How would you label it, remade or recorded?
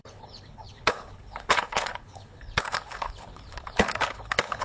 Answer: remade